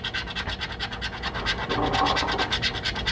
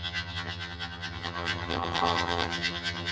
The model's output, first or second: second